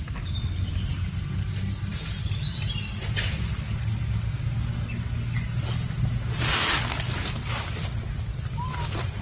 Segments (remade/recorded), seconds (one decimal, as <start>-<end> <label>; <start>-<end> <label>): 0.0-9.2 recorded